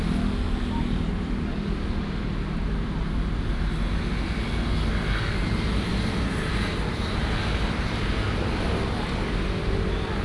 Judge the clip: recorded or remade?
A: recorded